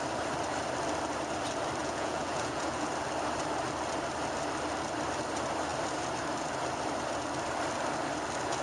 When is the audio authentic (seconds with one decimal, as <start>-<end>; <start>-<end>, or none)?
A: 0.0-1.8; 2.9-8.6